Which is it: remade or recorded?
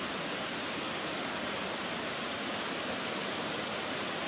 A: recorded